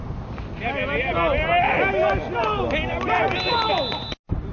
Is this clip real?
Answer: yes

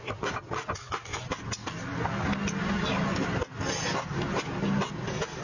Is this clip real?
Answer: yes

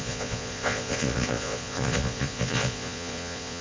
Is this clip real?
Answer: no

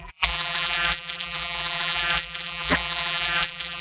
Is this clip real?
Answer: no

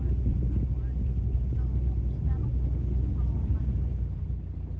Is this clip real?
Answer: yes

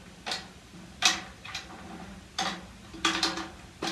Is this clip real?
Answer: yes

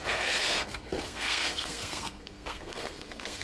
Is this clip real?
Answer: no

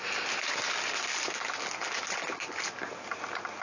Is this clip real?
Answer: yes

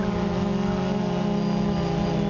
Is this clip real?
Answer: yes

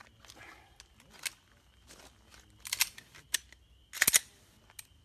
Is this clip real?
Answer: yes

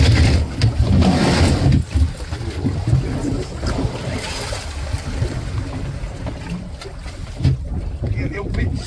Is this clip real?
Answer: yes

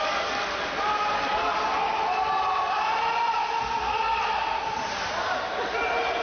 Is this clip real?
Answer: yes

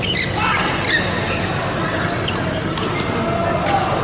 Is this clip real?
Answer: yes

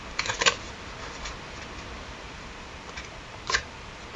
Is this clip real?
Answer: yes